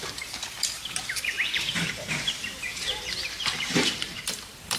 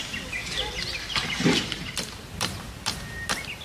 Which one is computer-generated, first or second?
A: first